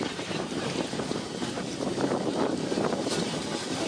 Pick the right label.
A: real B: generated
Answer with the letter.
B